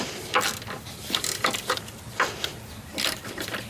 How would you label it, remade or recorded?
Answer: remade